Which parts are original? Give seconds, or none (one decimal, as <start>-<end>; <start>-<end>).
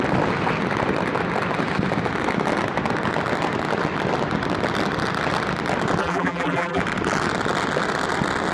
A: 0.0-6.0; 6.8-8.5